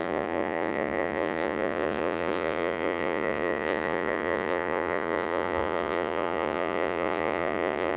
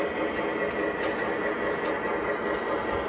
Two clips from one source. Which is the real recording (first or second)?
second